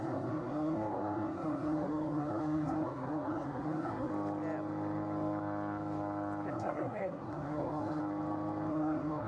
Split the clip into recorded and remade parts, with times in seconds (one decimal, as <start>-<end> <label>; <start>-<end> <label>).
0.0-4.1 remade; 4.1-6.5 recorded; 6.5-8.0 remade; 8.0-8.7 recorded; 8.7-9.3 remade